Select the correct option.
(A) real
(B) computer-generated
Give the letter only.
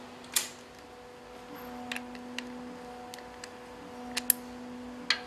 A